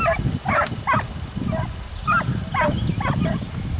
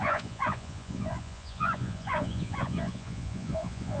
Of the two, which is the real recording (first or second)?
first